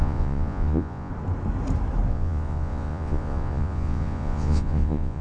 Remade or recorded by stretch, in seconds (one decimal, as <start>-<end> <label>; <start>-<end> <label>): 0.0-1.1 remade; 1.1-2.1 recorded; 2.1-5.2 remade